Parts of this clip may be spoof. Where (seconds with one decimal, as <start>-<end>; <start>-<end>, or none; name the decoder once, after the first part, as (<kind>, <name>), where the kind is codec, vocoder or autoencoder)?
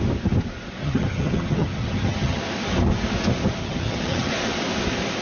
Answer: 0.8-2.4 (vocoder, HiFi-GAN); 3.6-4.3